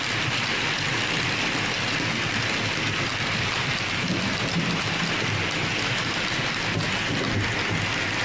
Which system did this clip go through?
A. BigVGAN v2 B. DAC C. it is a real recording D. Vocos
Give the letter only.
C